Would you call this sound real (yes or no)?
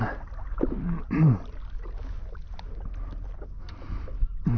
yes